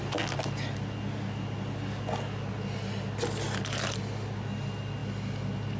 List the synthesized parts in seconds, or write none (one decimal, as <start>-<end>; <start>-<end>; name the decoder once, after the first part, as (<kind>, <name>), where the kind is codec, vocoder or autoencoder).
none

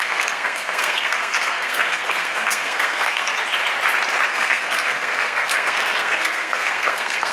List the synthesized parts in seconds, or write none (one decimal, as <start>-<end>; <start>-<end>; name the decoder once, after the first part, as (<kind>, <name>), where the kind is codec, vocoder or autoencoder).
0.0-3.3 (codec, SNAC); 4.3-7.3

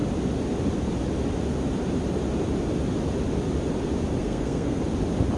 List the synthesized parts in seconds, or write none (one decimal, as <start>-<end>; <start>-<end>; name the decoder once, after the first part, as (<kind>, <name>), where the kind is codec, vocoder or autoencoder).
4.2-4.8 (codec, SNAC)